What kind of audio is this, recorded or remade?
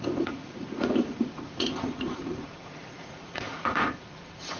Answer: remade